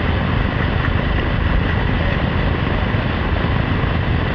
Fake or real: real